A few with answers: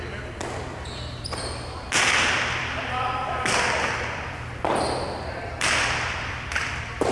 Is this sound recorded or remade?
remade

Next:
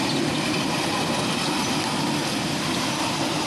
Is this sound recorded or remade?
remade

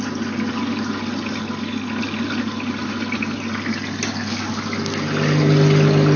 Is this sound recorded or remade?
recorded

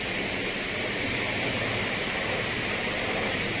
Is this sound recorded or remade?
remade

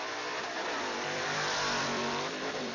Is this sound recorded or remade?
remade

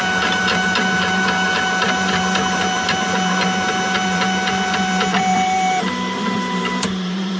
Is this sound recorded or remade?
remade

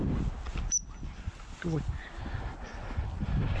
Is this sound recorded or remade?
recorded